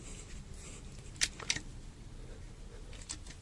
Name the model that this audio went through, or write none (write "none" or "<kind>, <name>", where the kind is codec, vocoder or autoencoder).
none